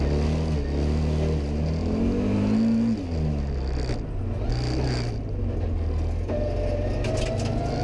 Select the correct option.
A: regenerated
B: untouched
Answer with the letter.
B